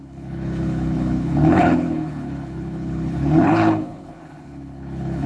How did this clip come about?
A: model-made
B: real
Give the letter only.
A